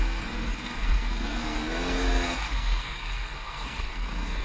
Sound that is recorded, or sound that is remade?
remade